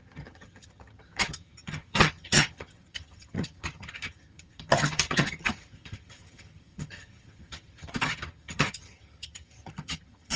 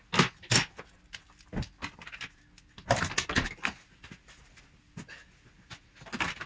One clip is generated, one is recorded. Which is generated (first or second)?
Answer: first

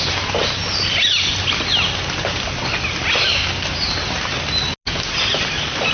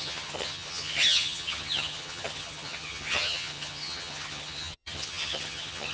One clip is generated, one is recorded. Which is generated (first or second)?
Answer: second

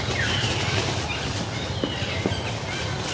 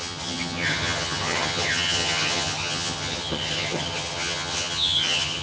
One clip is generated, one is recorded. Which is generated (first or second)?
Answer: second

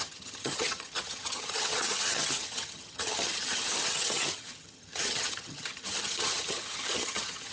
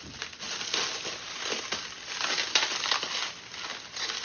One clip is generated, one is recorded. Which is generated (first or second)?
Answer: first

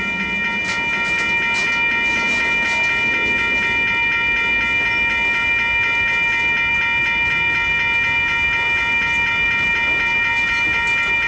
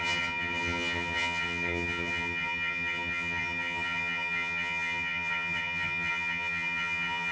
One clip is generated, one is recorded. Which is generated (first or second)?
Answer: second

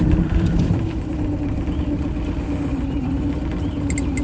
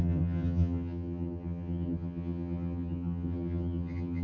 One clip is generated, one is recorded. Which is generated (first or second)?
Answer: second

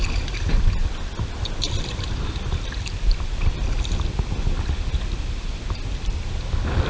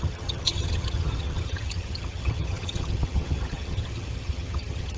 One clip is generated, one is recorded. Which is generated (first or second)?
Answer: second